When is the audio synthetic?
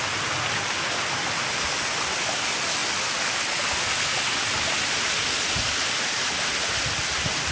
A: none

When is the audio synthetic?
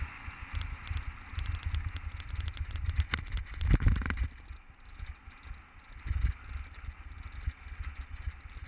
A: none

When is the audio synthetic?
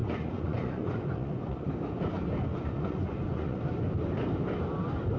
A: 0.0-1.7 (vocoder, Vocos); 2.5-3.6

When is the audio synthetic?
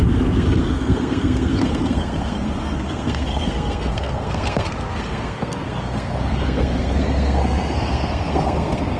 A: 0.0-9.0 (codec, SNAC)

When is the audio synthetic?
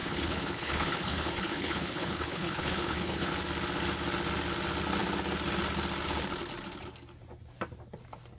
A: 0.0-3.3 (codec, HILCodec)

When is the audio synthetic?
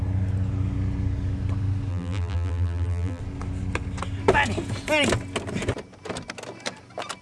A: 1.9-3.2 (vocoder, BigVGAN v2)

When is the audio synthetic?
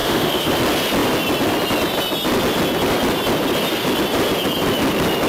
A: 0.0-0.5 (autoencoder, DAC-VAE)